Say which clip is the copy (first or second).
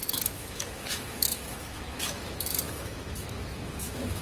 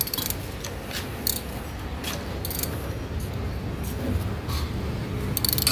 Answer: first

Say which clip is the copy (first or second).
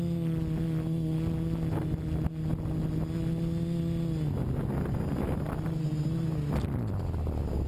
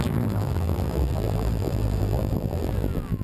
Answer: second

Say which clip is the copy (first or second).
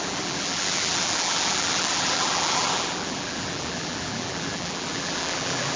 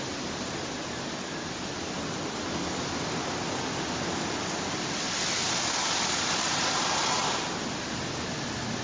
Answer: first